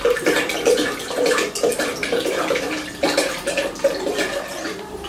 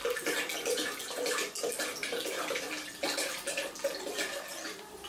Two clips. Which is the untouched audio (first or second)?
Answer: second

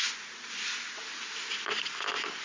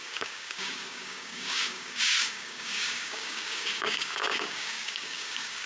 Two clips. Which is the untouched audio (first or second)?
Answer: first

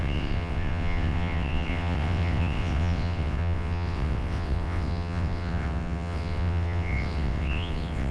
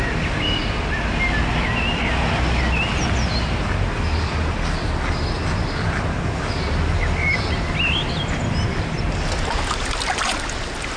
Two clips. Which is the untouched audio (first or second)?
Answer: second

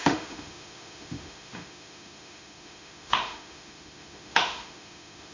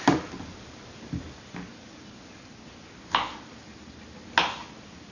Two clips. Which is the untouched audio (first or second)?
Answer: second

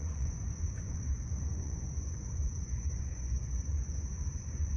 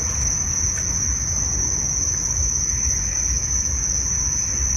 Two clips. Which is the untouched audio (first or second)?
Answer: second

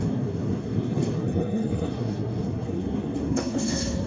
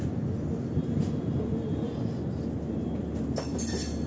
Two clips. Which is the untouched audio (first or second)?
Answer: second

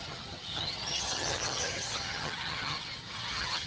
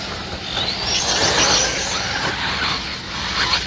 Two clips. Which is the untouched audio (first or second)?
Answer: second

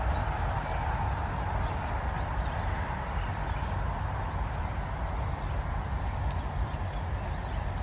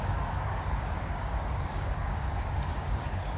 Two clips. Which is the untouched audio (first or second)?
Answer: first